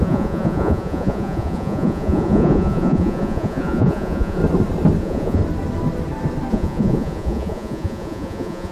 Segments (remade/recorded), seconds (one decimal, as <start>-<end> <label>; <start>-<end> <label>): 0.0-4.4 remade; 4.4-5.0 recorded; 5.0-5.4 remade; 5.4-6.5 recorded; 6.5-8.7 remade